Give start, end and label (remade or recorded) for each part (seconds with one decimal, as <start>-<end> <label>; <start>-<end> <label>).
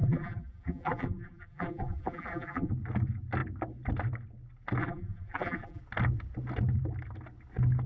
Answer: 0.0-2.7 remade; 2.7-4.8 recorded; 4.8-5.8 remade; 5.8-7.9 recorded